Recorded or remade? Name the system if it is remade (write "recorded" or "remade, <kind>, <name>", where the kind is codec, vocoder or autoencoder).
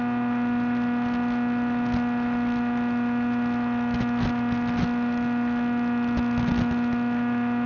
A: recorded